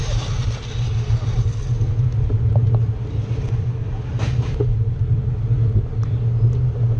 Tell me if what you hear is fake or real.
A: real